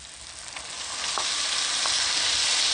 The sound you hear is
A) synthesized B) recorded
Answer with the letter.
B